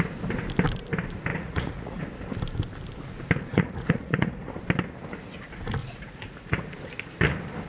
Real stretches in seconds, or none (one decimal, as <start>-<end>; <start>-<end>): 0.0-1.3; 2.0-3.5; 4.5-5.8; 6.7-7.7